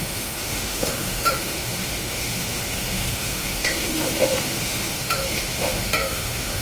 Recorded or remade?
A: remade